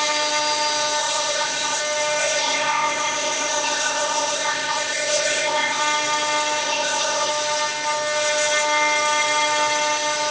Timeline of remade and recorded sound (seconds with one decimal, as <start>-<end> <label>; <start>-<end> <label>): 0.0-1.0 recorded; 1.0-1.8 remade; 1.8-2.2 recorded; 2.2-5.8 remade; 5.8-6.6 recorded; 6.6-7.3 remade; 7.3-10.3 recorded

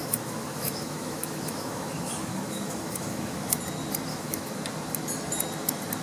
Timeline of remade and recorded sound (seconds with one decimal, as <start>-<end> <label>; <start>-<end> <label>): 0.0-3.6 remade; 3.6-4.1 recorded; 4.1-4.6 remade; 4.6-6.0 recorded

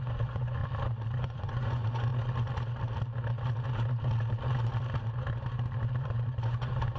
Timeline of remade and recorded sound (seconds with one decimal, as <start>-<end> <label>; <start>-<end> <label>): 0.0-0.6 remade; 0.6-1.2 recorded; 1.2-2.1 remade; 2.1-6.0 recorded; 6.0-7.0 remade

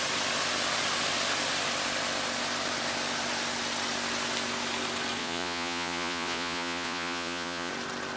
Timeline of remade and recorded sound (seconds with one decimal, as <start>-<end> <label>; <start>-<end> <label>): 0.0-5.2 recorded; 5.2-7.7 remade; 7.7-8.2 recorded